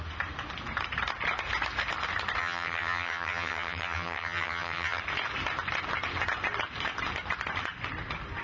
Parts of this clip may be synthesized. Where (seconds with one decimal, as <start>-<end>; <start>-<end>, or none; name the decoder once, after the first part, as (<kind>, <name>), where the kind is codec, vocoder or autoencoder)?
2.4-5.0 (vocoder, HiFi-GAN)